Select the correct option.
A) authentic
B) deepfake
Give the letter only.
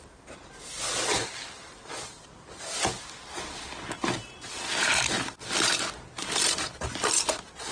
A